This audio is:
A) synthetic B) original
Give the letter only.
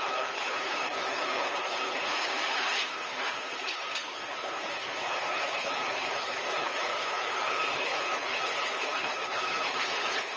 A